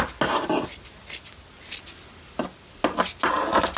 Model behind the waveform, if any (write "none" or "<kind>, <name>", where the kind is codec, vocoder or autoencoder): none